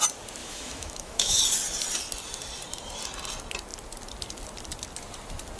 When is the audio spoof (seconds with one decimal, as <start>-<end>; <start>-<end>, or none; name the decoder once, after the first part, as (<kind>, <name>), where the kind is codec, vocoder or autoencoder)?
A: 0.4-1.4 (autoencoder, DAC-VAE)